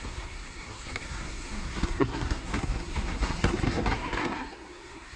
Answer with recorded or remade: remade